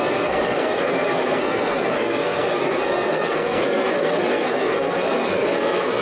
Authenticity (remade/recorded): remade